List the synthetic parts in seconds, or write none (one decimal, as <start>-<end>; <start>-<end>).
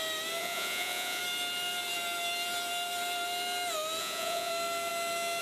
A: 0.4-1.2; 4.0-4.5